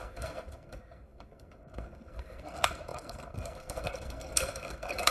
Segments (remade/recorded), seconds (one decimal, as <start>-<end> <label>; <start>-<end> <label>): 0.0-5.1 remade